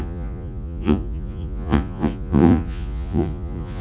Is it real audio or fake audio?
fake